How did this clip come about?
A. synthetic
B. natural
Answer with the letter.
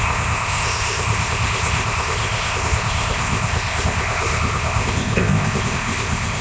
A